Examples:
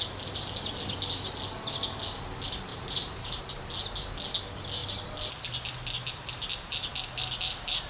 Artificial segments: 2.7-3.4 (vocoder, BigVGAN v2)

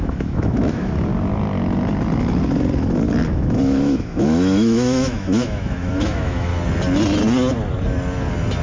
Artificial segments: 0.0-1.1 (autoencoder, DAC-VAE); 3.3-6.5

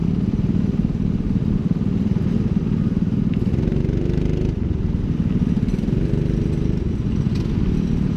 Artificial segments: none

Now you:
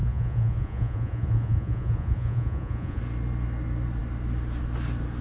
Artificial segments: 0.0-3.0 (vocoder, Vocos)

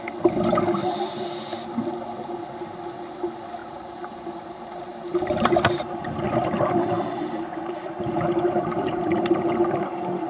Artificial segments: 3.6-7.6 (vocoder, BigVGAN v2)